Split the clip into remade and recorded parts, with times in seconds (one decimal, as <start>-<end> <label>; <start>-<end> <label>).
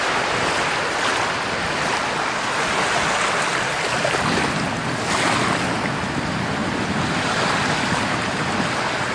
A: 0.0-9.1 recorded